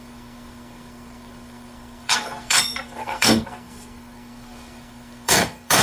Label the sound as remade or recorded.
remade